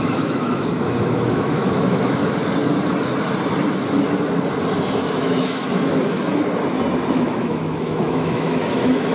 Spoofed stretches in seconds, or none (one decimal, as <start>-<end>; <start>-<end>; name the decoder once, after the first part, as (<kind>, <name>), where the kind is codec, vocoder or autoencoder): 0.0-2.2 (autoencoder, DAC-VAE); 5.0-6.3; 7.1-9.1